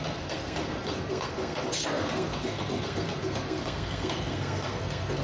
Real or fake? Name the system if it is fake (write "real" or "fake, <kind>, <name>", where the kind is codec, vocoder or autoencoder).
fake, codec, SNAC